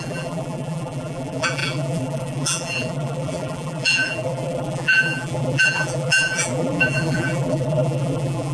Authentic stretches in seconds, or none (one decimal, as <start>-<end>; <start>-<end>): none